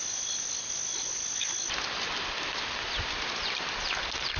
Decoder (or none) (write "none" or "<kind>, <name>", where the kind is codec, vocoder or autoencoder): none